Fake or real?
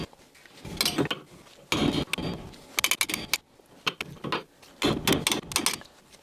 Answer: real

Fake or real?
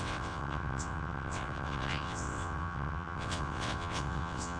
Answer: fake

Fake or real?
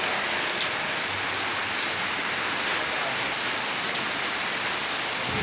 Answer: real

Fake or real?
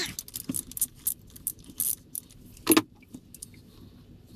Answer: real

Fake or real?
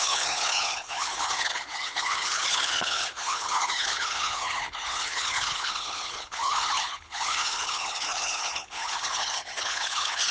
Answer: fake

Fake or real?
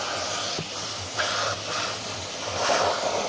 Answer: real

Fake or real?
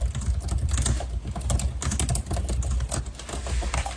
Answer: real